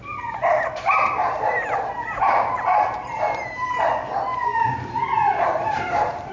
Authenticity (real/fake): fake